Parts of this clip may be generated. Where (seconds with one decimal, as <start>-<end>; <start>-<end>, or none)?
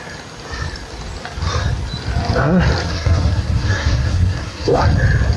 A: 2.9-4.8